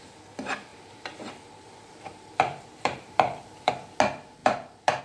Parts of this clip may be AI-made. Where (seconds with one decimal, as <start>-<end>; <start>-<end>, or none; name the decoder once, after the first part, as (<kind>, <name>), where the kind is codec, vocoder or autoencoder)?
0.7-3.7 (vocoder, BigVGAN v2); 4.4-5.0